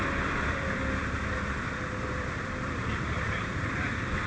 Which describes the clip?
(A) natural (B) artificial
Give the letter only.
B